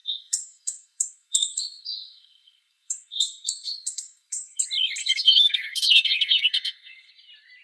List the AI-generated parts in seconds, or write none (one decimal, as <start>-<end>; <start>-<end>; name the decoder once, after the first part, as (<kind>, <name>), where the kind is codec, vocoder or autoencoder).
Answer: 0.0-4.6 (codec, SNAC); 5.0-7.1